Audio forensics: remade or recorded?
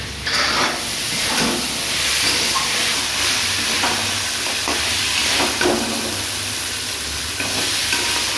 recorded